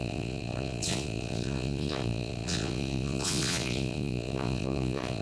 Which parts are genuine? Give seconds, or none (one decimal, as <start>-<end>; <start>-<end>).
none